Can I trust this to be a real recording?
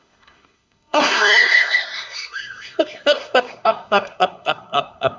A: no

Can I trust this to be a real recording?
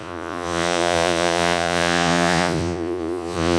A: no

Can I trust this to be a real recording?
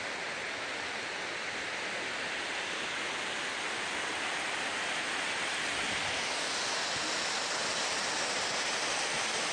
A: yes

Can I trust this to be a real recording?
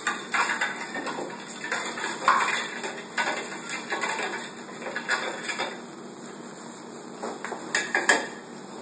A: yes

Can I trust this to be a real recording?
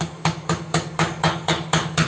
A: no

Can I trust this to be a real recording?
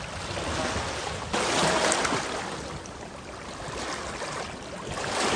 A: yes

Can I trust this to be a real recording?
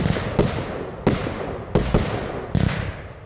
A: yes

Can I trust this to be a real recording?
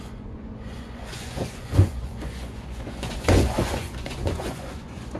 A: no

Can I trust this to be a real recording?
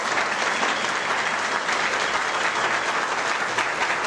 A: yes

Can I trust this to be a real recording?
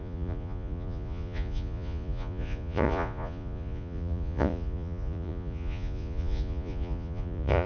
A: no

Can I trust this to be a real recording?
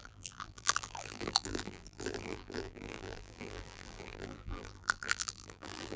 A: no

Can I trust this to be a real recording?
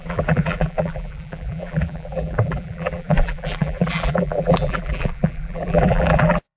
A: no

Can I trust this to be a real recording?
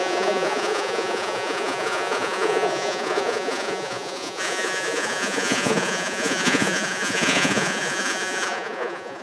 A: no